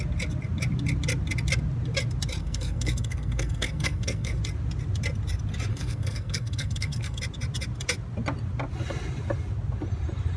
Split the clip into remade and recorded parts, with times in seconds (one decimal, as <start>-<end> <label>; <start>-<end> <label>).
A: 0.0-2.4 recorded; 2.4-4.4 remade; 4.4-5.7 recorded; 5.7-7.2 remade; 7.2-10.4 recorded